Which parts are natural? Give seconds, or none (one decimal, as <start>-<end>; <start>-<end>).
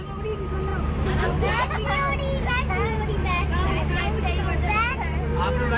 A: 0.0-5.8